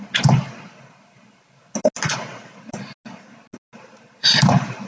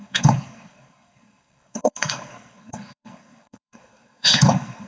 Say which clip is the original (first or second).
first